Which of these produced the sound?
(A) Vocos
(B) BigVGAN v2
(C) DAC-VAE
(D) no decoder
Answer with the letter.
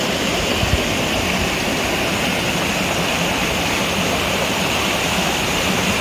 D